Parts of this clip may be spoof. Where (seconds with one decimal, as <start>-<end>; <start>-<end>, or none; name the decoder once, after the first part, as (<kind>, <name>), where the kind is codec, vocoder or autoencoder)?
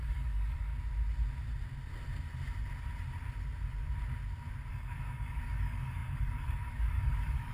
0.0-0.7 (codec, DAC); 4.7-7.5